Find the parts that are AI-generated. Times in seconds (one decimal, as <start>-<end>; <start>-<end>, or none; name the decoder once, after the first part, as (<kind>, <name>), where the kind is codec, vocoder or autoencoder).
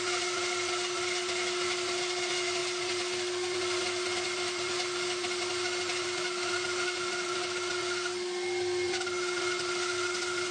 none